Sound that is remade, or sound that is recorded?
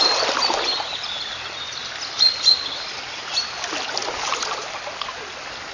recorded